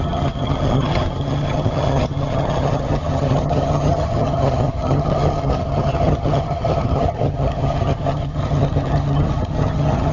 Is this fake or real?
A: fake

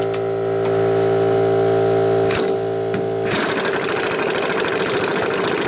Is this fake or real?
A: real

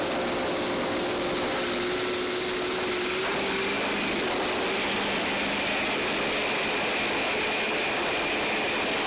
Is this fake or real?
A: real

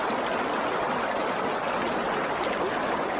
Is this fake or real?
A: real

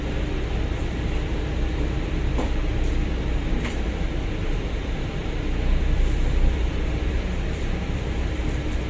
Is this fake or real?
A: fake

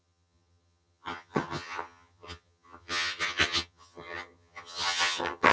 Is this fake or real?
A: fake